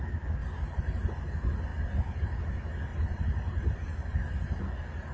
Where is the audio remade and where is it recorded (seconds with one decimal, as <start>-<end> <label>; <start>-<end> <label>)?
0.0-0.4 recorded; 0.4-1.1 remade; 1.1-2.9 recorded; 2.9-4.6 remade; 4.6-5.1 recorded